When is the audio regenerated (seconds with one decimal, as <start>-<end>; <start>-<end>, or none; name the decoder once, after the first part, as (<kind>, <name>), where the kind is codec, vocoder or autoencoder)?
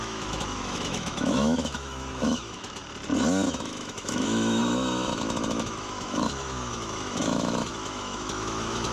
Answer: 0.0-2.8 (autoencoder, DAC-VAE); 3.5-8.9